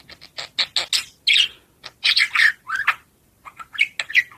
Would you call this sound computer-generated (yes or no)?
no